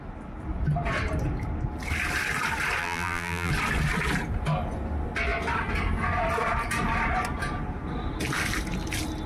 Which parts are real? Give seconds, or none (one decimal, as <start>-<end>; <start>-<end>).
0.0-2.8; 3.5-9.3